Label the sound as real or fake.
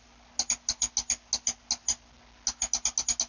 real